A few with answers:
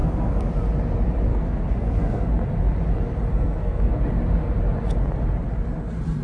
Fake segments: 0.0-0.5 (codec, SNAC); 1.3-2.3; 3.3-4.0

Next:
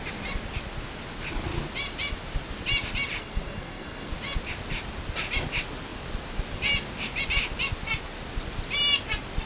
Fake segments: 3.2-4.1 (codec, SNAC)

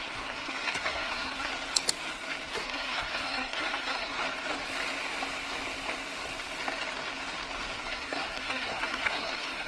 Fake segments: 0.0-1.5 (codec, SNAC); 2.5-4.2; 7.8-9.7